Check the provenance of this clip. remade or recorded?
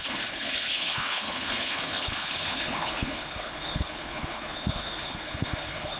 remade